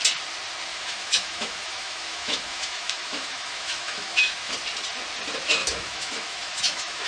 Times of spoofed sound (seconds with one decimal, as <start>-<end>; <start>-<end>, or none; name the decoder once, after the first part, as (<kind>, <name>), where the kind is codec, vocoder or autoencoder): 0.7-4.5 (autoencoder, DAC-VAE); 5.6-7.1